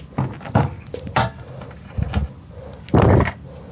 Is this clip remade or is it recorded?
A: recorded